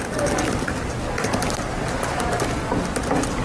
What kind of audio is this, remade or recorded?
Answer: recorded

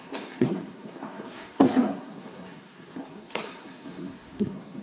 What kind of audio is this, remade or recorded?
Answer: remade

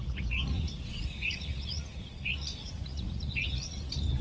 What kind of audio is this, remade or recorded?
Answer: remade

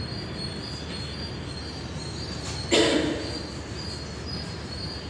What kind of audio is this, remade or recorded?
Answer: recorded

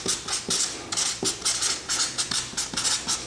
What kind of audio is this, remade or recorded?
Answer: recorded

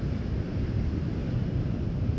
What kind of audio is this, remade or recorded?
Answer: recorded